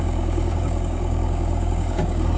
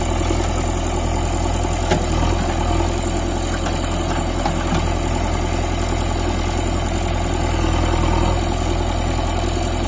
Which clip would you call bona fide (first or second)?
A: second